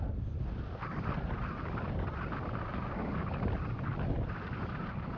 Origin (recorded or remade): recorded